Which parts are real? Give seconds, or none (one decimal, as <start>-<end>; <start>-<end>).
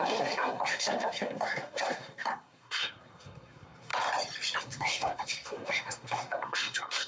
3.9-4.6